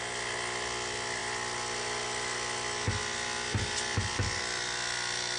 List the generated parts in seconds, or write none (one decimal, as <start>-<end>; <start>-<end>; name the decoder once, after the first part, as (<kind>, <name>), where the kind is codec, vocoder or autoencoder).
none